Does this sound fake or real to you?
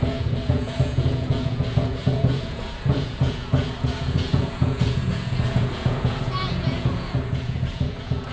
fake